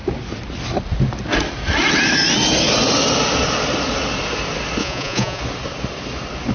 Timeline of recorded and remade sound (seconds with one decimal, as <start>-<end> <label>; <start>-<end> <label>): 0.0-4.8 recorded; 4.8-5.4 remade; 5.4-6.5 recorded